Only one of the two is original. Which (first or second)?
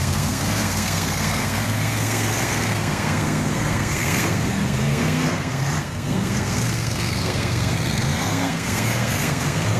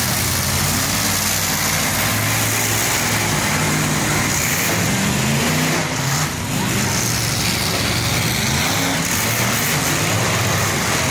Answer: second